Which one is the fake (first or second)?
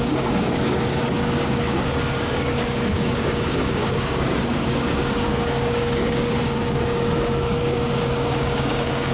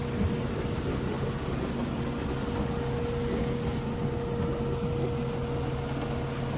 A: first